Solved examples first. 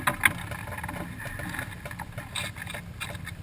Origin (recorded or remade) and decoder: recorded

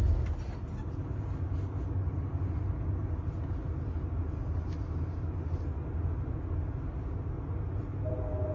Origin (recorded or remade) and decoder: recorded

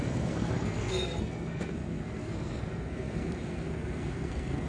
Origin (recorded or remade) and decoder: remade, codec, SNAC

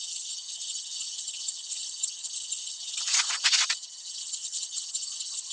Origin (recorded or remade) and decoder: remade, vocoder, HiFi-GAN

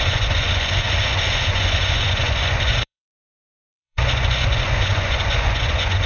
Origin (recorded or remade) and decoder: remade, vocoder, Vocos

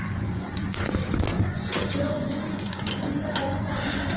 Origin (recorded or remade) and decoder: remade, vocoder, Vocos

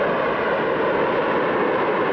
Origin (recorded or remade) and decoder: recorded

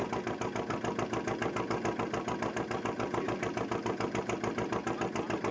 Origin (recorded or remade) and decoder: recorded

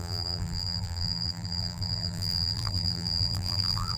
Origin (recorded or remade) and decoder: remade, vocoder, BigVGAN v2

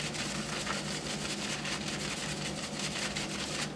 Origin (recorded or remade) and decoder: recorded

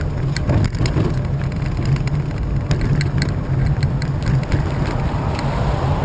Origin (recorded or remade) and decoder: recorded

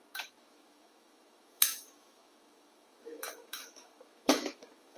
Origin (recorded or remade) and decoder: remade, autoencoder, DAC-VAE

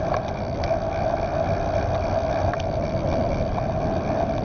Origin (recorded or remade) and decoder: recorded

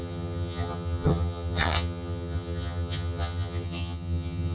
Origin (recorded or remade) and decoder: remade, vocoder, HiFi-GAN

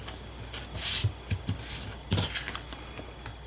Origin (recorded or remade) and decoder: recorded